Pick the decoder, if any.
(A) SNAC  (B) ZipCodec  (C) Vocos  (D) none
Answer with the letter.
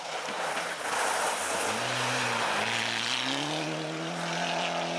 D